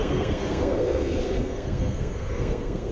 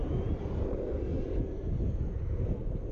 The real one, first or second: second